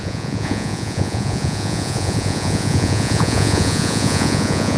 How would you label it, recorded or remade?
remade